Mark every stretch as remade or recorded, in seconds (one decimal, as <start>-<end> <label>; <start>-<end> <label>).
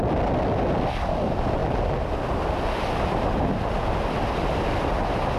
0.0-5.4 recorded